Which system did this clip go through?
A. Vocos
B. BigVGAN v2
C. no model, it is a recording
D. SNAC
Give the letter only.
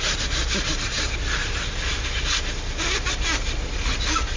C